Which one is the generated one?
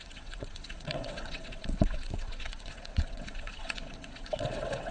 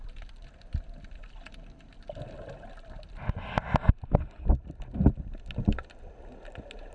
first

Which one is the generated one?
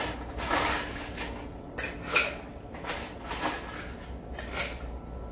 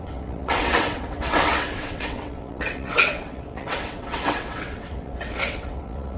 second